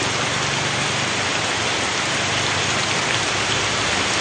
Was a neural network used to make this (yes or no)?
no